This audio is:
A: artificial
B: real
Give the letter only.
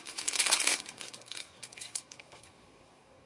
A